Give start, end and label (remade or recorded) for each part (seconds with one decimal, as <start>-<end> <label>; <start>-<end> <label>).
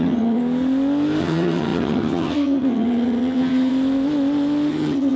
0.0-0.4 remade; 0.4-1.2 recorded; 1.2-3.7 remade; 3.7-4.7 recorded; 4.7-5.2 remade